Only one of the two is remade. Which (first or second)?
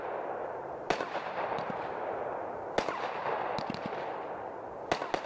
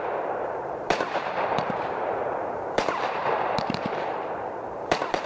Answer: second